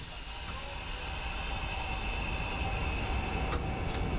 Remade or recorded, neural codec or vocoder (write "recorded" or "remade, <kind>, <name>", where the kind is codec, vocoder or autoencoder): recorded